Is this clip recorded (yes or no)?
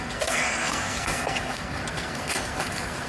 no